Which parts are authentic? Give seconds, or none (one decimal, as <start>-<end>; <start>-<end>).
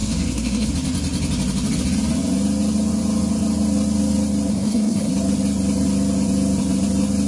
0.7-4.5; 5.1-7.3